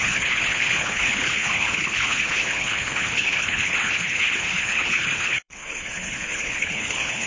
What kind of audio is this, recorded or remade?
remade